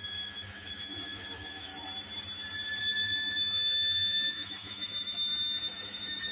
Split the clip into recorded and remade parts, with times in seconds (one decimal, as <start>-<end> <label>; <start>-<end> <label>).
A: 0.0-1.7 remade; 1.7-2.8 recorded; 2.8-6.3 remade